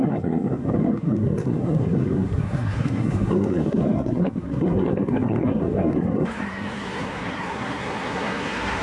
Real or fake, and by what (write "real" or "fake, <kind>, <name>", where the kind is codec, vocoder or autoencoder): fake, codec, SNAC